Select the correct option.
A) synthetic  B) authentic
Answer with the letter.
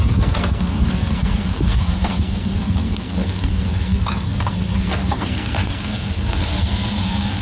A